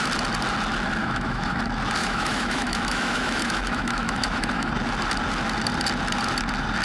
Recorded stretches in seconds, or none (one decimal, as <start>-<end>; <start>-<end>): 0.0-1.0; 1.6-2.0; 4.7-6.8